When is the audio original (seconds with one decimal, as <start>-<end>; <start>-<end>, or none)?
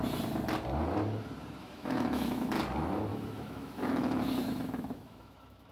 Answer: 0.0-1.6; 2.5-3.1